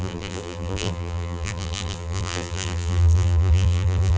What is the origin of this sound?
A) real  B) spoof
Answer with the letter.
B